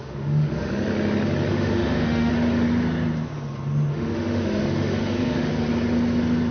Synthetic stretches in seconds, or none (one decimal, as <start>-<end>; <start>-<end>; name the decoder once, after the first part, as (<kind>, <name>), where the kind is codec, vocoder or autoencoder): 0.0-0.7 (autoencoder, DAC-VAE); 1.5-2.3; 3.9-5.5